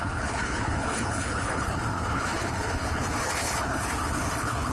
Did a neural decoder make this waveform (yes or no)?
yes